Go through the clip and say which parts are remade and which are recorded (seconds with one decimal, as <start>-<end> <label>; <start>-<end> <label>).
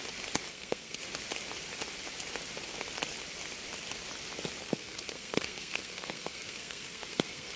0.0-0.5 recorded; 0.5-1.0 remade; 1.0-4.6 recorded; 4.6-7.6 remade